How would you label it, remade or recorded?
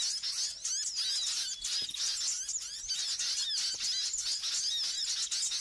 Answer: recorded